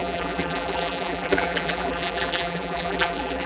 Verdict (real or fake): fake